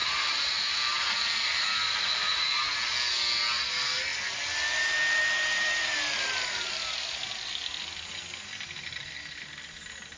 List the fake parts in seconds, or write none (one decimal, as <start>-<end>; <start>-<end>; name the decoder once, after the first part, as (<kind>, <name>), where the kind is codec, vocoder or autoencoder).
0.0-2.6 (vocoder, BigVGAN v2)